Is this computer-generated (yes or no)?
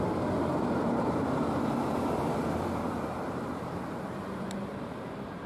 yes